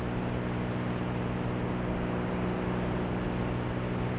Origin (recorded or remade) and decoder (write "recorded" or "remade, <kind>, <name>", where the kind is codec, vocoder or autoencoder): recorded